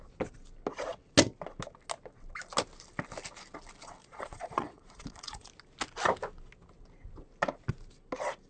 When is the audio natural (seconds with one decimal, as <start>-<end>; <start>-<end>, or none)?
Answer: 0.0-4.0; 5.5-8.5